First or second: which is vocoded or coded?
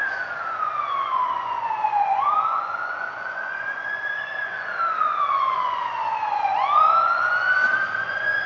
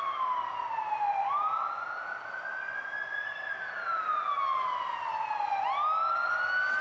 first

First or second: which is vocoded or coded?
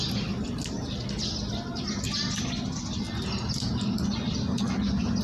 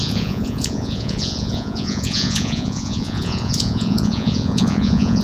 second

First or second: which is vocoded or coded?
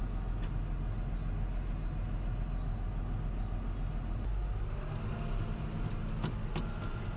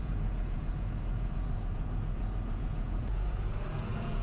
second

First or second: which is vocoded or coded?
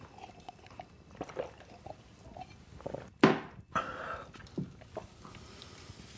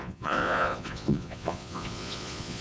second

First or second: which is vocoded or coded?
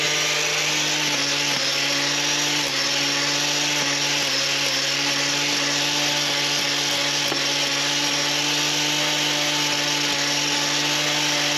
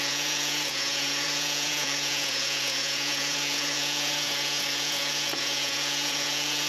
second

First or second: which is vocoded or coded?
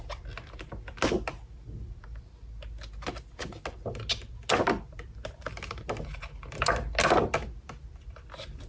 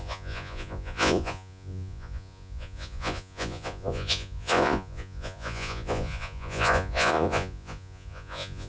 second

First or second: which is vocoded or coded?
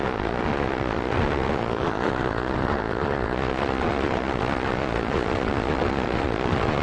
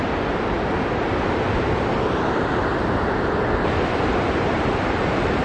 first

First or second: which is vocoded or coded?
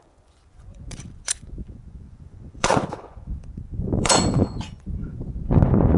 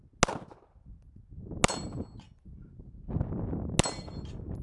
first